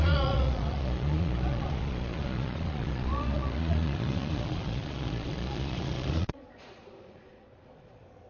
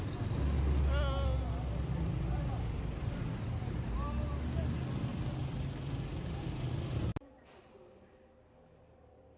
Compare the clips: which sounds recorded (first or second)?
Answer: second